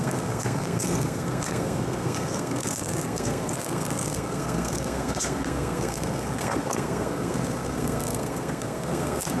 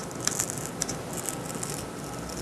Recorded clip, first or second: second